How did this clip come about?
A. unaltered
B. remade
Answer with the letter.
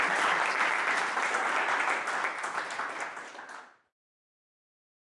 A